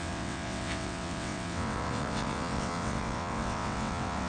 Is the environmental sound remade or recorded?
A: remade